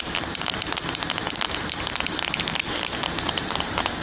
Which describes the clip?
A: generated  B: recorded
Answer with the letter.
A